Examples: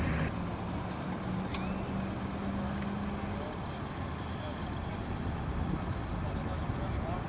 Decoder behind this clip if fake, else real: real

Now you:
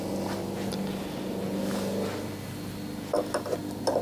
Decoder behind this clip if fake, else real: real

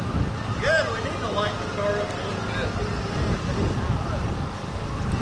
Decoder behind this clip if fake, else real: real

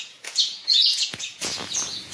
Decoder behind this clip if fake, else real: fake, vocoder, Vocos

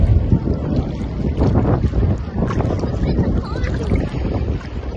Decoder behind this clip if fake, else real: real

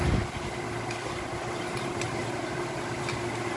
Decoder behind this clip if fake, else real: real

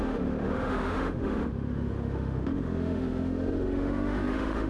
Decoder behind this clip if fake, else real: fake, autoencoder, DAC-VAE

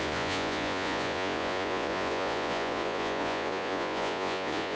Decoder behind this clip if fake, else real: fake, vocoder, Vocos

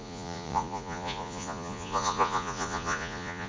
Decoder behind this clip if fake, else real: fake, vocoder, Vocos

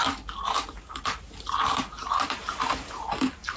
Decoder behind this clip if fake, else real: real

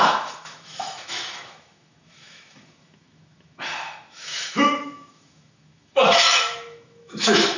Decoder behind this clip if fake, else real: fake, autoencoder, DAC-VAE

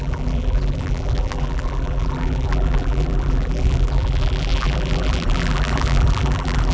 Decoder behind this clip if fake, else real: fake, vocoder, BigVGAN v2